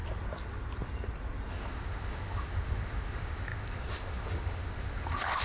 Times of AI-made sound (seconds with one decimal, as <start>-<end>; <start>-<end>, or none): 1.5-5.4

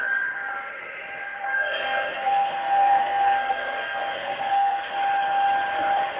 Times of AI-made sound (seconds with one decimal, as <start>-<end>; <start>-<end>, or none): 1.2-4.9

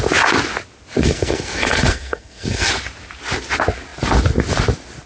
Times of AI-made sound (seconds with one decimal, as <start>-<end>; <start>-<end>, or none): 1.0-2.7

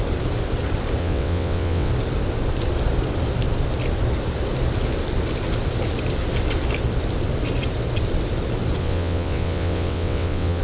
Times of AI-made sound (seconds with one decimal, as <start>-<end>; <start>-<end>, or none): 1.0-1.9; 8.8-10.6

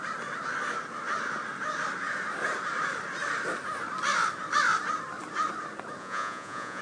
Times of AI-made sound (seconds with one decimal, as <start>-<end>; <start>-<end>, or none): 6.0-6.8

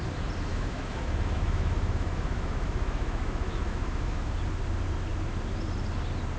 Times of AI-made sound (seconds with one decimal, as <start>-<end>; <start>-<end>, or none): 0.5-4.3